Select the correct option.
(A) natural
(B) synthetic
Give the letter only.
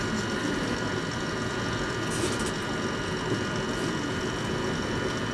A